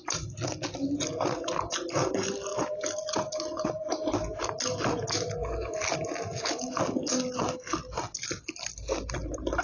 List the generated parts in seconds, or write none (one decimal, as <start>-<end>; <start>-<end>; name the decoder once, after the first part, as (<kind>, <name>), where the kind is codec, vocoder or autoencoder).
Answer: none